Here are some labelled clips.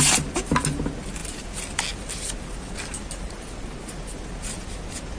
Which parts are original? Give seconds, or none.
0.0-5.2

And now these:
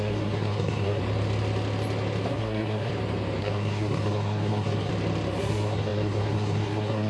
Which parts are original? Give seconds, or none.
1.0-2.3; 2.9-3.4; 4.9-5.4

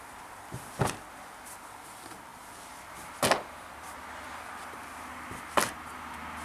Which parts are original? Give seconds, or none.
0.0-6.4

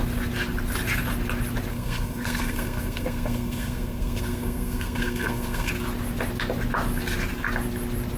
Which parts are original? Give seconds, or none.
0.0-1.7; 5.7-8.2

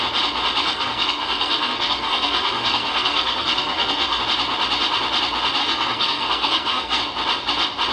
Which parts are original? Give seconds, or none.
0.0-0.6; 4.2-5.6; 7.0-7.9

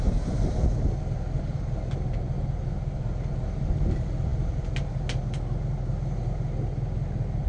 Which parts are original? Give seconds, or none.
0.0-7.5

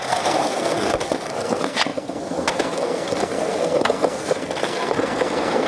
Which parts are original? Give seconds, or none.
none